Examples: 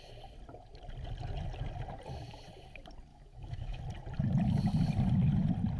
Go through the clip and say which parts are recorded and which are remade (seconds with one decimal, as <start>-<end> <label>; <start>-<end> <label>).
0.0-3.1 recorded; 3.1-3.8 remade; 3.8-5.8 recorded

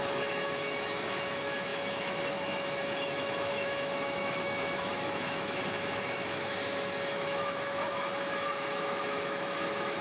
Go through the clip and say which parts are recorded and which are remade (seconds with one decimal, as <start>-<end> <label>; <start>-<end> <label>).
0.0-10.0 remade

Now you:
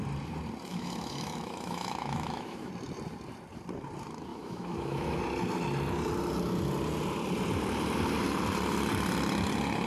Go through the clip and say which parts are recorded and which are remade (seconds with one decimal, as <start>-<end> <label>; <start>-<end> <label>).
0.0-0.7 recorded; 0.7-2.7 remade; 2.7-4.3 recorded; 4.3-5.2 remade; 5.2-9.9 recorded

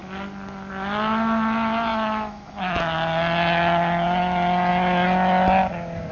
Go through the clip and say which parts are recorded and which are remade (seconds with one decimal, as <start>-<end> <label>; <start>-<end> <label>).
0.0-1.9 recorded; 1.9-2.8 remade; 2.8-6.1 recorded

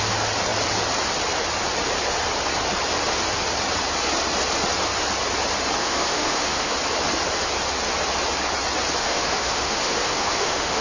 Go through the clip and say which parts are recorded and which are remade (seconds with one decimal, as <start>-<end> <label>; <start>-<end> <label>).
0.0-5.8 recorded; 5.8-6.7 remade; 6.7-9.0 recorded; 9.0-10.8 remade